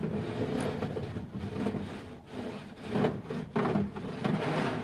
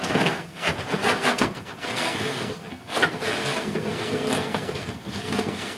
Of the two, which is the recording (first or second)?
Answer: first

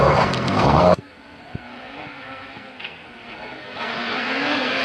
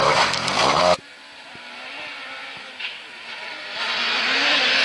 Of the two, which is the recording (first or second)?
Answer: second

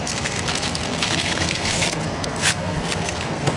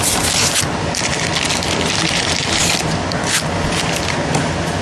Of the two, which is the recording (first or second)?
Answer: second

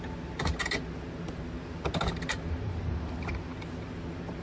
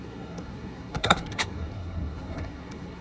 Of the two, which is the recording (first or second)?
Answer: first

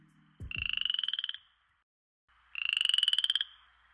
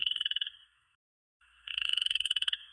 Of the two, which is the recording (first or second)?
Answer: first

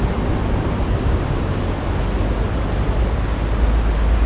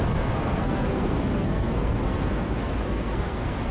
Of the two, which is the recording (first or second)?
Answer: first